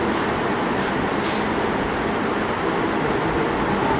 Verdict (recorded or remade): recorded